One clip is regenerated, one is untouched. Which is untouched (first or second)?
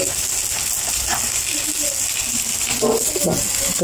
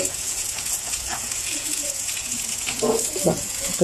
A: first